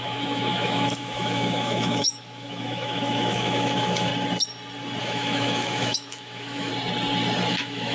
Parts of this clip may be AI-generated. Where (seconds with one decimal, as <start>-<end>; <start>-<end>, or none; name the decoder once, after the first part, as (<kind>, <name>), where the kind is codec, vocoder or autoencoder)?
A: 0.0-4.1 (autoencoder, DAC-VAE); 5.0-6.7; 7.5-7.9